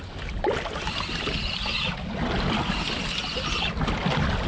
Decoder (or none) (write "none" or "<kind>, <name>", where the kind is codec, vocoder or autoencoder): none